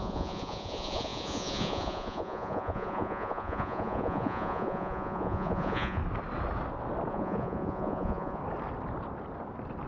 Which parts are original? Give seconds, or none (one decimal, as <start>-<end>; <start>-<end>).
6.0-7.1; 8.4-9.9